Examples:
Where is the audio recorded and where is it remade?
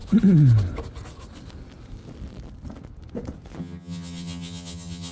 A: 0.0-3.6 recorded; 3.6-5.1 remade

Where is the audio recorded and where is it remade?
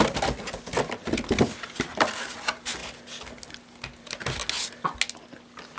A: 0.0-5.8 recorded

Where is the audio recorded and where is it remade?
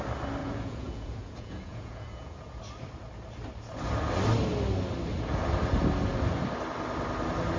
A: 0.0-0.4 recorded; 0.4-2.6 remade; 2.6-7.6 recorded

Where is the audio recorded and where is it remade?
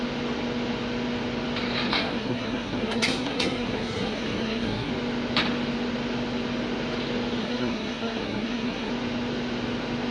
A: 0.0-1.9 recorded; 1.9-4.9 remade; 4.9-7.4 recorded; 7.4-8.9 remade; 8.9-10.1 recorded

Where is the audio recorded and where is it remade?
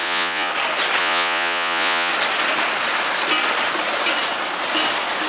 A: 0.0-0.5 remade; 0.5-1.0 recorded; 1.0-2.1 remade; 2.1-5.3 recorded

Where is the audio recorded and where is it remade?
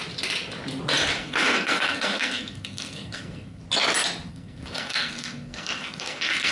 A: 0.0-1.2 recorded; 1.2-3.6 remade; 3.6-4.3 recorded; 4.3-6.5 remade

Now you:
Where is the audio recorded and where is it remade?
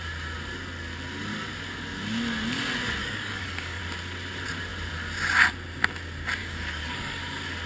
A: 0.0-3.0 recorded; 3.0-3.8 remade; 3.8-6.4 recorded; 6.4-7.2 remade; 7.2-7.7 recorded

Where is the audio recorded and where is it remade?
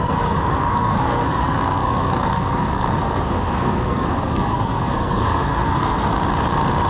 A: 0.0-6.1 remade; 6.1-6.9 recorded